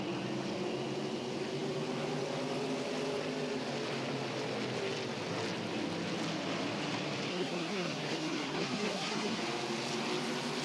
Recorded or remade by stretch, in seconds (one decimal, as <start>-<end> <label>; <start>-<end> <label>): 0.0-7.3 recorded; 7.3-9.4 remade; 9.4-10.6 recorded